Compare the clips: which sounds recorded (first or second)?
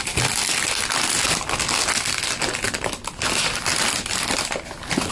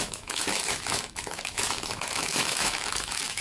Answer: first